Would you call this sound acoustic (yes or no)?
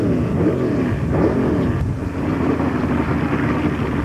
yes